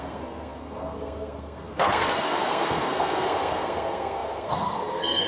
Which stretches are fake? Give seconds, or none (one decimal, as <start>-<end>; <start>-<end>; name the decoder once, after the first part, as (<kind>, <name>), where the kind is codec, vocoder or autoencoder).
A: 0.0-5.3 (codec, SNAC)